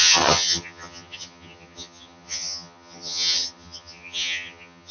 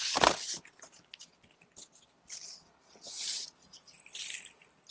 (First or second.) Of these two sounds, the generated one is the first